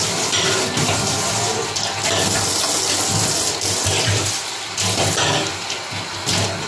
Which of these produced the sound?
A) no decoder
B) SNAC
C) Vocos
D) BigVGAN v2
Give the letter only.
A